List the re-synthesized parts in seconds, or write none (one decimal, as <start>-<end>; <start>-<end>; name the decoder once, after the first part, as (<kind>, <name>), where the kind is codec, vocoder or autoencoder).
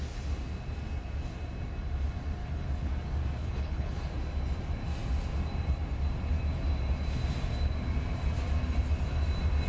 2.4-2.9 (codec, HILCodec); 3.4-4.0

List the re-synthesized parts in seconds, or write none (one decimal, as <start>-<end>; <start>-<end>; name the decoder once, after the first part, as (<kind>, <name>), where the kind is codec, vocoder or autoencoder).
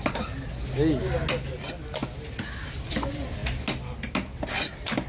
none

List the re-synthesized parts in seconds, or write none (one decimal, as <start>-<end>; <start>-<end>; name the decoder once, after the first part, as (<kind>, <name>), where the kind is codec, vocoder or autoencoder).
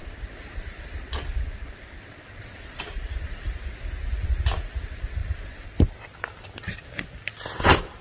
none